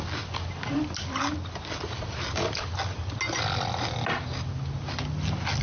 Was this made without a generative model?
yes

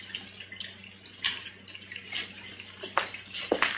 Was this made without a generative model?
yes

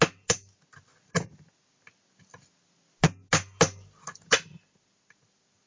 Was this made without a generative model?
yes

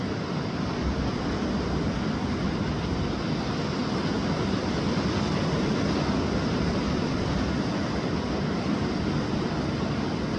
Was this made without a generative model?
yes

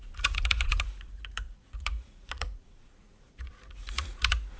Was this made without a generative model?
no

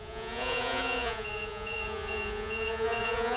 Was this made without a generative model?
no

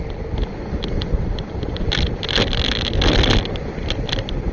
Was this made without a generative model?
yes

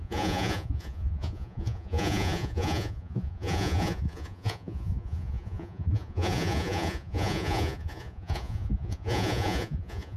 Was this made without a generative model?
no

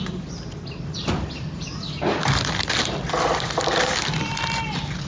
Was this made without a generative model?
yes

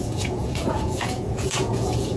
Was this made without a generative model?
no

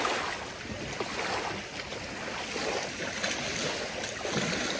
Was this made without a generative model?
yes